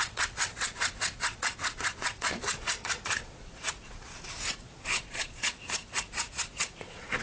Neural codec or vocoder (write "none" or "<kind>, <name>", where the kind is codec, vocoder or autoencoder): vocoder, Vocos